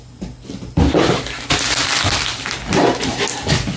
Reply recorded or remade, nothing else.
recorded